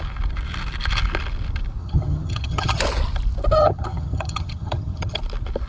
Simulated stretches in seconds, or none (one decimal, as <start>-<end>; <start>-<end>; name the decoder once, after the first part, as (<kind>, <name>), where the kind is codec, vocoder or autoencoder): 1.8-2.8 (vocoder, HiFi-GAN); 3.6-5.2